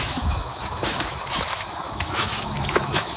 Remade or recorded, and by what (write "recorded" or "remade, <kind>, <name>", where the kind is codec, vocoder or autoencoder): remade, autoencoder, DAC-VAE